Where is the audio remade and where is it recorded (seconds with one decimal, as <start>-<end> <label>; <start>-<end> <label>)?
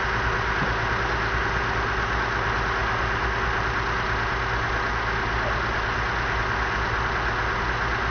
0.0-8.1 recorded